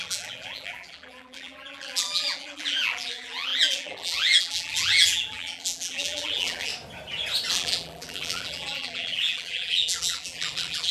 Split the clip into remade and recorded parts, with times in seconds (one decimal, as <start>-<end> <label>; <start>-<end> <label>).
0.0-6.7 remade; 6.7-7.5 recorded; 7.5-10.9 remade

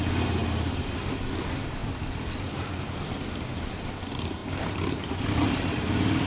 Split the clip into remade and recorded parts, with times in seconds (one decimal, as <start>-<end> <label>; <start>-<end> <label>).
0.0-4.4 recorded; 4.4-6.3 remade

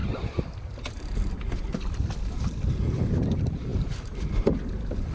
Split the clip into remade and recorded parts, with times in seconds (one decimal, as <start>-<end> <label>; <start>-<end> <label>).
0.0-5.1 remade

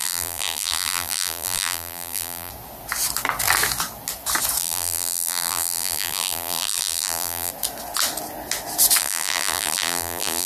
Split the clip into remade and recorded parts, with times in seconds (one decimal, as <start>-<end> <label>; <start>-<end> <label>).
0.0-2.5 remade; 2.5-4.6 recorded; 4.6-7.5 remade; 7.5-9.0 recorded; 9.0-10.5 remade

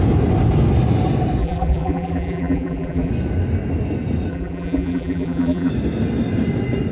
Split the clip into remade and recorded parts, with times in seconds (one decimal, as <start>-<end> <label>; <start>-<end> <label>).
0.0-1.4 recorded; 1.4-3.1 remade; 3.1-4.3 recorded; 4.3-5.7 remade; 5.7-6.9 recorded

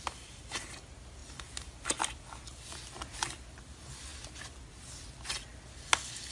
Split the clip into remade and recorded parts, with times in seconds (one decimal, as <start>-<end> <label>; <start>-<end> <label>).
0.0-6.3 recorded

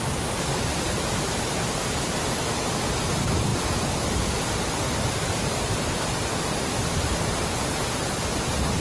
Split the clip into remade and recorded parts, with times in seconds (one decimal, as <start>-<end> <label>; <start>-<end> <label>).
0.0-0.5 recorded; 0.5-2.4 remade; 2.4-8.8 recorded